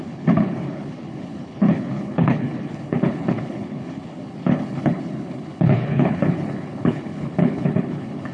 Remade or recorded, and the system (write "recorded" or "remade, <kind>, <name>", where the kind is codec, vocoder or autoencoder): remade, codec, HILCodec